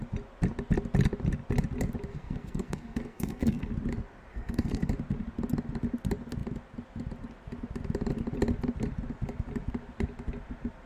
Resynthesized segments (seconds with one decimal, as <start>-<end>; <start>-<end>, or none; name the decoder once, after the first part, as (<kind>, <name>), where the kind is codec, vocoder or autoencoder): 2.1-3.7 (codec, SNAC); 4.3-4.9